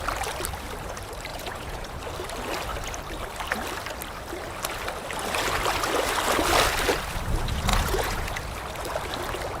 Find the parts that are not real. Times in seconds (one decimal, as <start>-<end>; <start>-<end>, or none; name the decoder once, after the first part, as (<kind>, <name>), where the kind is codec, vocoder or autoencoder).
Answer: 1.3-2.0 (vocoder, Vocos); 7.7-8.3